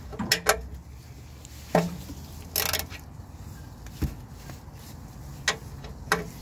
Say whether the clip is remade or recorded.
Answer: recorded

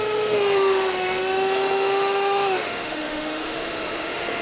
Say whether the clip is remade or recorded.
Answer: remade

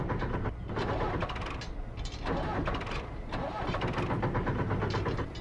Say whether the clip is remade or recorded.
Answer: recorded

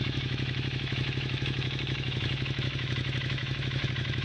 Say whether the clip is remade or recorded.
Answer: remade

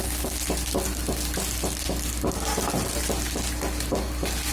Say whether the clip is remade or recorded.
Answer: recorded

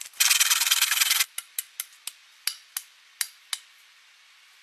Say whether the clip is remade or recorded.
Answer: recorded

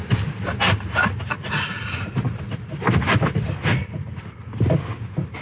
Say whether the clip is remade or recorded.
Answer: recorded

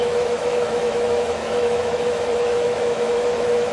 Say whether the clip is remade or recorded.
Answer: remade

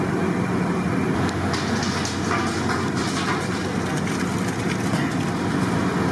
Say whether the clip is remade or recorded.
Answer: recorded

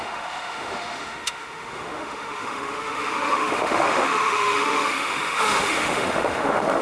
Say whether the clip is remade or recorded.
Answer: remade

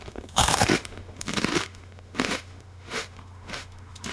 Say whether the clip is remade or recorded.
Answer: remade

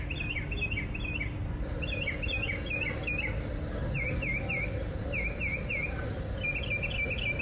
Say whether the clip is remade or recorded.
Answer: recorded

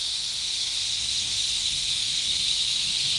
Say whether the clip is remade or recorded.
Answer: remade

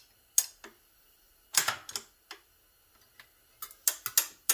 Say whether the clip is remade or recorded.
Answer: recorded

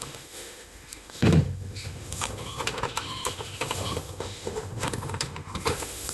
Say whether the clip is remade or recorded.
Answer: remade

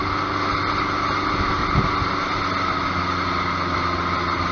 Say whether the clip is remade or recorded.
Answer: recorded